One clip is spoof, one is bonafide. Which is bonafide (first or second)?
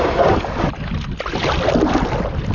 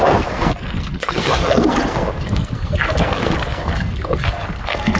first